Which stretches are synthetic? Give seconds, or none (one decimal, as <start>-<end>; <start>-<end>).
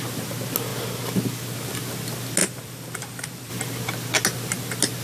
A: 2.4-3.5